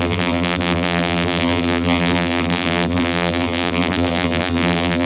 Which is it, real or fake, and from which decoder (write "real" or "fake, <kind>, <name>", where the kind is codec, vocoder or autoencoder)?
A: fake, vocoder, BigVGAN v2